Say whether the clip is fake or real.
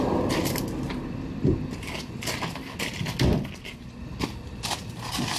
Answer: real